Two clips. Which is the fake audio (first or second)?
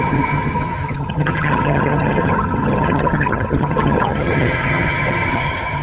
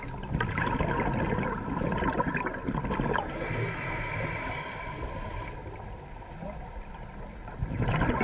first